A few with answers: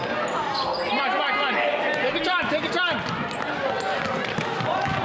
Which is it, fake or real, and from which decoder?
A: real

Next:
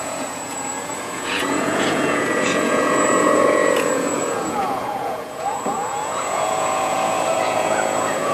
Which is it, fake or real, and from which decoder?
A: fake, vocoder, Vocos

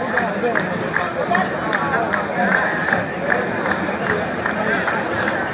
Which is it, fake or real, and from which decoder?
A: real